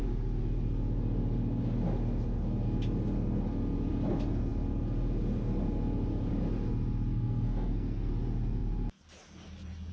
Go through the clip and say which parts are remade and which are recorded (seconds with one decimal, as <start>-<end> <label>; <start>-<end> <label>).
0.0-7.1 recorded; 7.1-8.1 remade; 8.1-9.9 recorded